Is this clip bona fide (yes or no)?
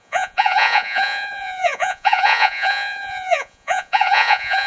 no